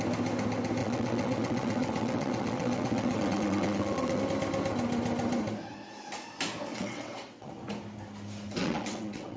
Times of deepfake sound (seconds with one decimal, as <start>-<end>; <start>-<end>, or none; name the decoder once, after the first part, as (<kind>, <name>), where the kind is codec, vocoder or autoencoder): 0.8-4.2 (vocoder, WaveNeXt); 6.7-7.5; 8.6-9.4